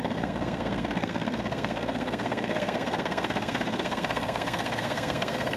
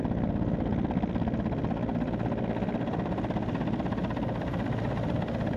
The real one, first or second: second